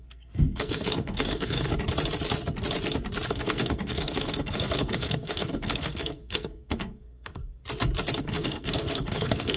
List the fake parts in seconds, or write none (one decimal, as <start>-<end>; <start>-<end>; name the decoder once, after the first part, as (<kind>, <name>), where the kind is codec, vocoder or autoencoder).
0.0-1.7 (codec, SNAC); 3.3-7.4; 8.2-9.6